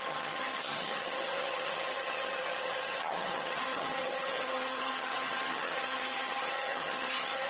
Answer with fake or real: fake